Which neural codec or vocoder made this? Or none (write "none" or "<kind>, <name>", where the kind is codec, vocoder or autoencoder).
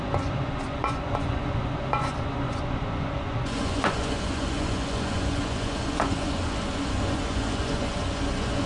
vocoder, Vocos